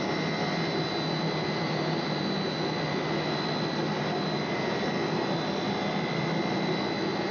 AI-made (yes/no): no